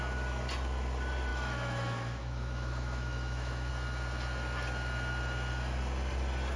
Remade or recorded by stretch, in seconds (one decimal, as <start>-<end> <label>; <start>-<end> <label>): 0.0-1.3 recorded; 1.3-3.7 remade; 3.7-6.6 recorded